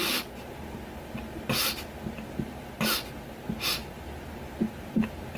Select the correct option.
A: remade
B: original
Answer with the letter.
B